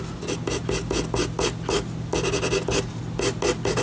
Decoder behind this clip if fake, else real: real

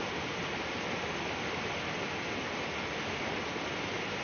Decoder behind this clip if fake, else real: real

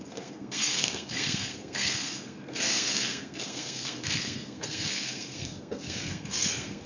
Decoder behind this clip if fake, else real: fake, codec, SNAC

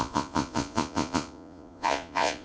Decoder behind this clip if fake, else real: fake, vocoder, Vocos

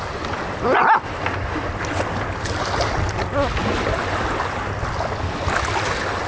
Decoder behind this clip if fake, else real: real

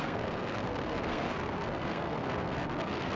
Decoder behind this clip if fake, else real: fake, codec, SNAC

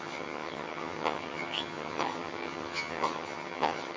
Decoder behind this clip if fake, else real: fake, vocoder, HiFi-GAN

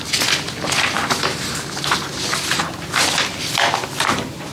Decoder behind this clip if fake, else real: real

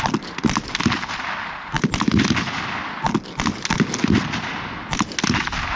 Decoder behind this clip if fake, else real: real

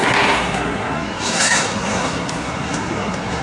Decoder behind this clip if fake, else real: fake, codec, SNAC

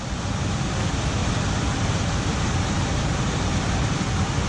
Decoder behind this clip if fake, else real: fake, vocoder, BigVGAN v2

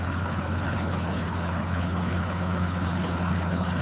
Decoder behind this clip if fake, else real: fake, codec, HILCodec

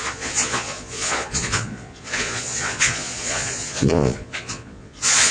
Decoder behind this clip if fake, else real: fake, vocoder, Vocos